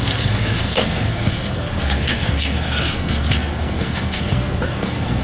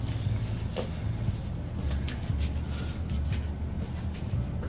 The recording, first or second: second